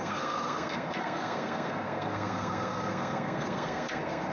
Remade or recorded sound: remade